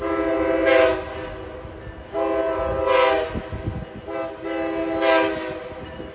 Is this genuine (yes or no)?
yes